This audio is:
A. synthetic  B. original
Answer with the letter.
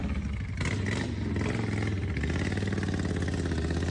B